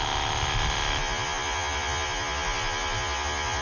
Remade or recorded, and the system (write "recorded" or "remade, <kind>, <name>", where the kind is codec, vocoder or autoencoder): recorded